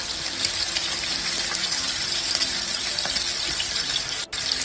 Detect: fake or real fake